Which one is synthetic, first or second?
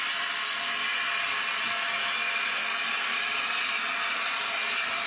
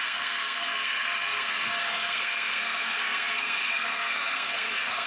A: second